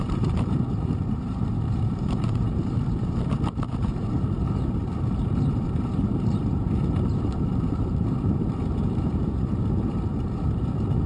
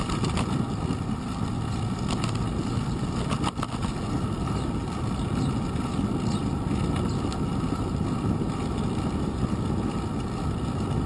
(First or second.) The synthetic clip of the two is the first